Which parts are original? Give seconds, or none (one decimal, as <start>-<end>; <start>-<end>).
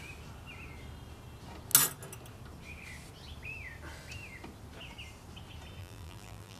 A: 0.0-5.8